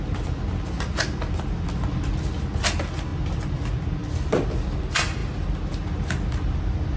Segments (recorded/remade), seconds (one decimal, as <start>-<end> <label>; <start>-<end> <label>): 0.0-7.0 recorded